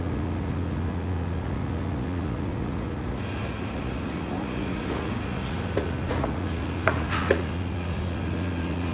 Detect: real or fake fake